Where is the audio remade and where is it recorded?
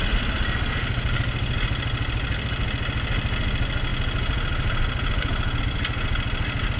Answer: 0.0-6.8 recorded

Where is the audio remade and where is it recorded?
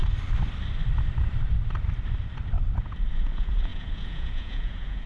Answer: 0.0-3.1 recorded; 3.1-5.1 remade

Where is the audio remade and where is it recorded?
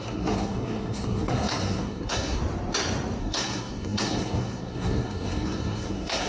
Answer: 0.0-2.4 remade; 2.4-3.2 recorded; 3.2-6.3 remade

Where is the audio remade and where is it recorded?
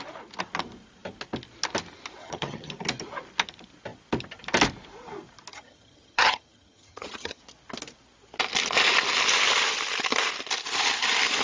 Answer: 0.0-2.2 recorded; 2.2-2.7 remade; 2.7-5.5 recorded; 5.5-7.4 remade; 7.4-11.4 recorded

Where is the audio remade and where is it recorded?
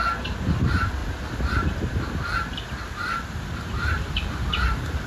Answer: 0.0-0.6 recorded; 0.6-1.0 remade; 1.0-1.5 recorded; 1.5-5.1 remade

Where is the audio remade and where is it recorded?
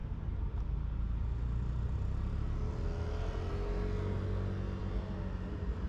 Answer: 0.0-5.9 recorded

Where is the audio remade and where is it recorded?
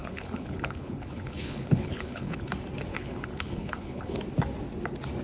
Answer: 0.0-2.5 remade; 2.5-2.9 recorded; 2.9-4.2 remade; 4.2-5.2 recorded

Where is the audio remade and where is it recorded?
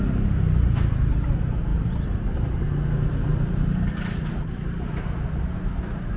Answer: 0.0-1.7 recorded; 1.7-2.6 remade; 2.6-3.3 recorded; 3.3-5.8 remade; 5.8-6.2 recorded